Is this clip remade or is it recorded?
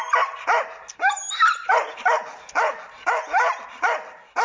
recorded